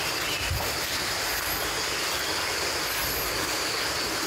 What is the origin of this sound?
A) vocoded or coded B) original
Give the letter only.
B